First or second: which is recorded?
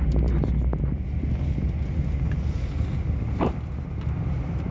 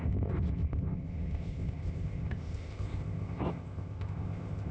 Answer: first